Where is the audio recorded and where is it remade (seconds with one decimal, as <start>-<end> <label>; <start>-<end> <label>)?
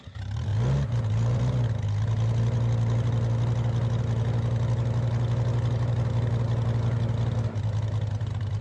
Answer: 0.0-8.6 recorded